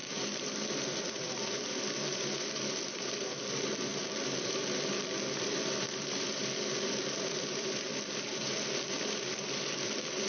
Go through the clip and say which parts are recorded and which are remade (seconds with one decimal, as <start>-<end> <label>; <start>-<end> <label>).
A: 0.0-10.3 remade